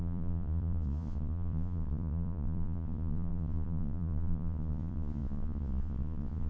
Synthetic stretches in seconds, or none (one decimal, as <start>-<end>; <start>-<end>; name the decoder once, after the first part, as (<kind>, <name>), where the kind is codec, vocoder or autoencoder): 0.0-6.5 (vocoder, Vocos)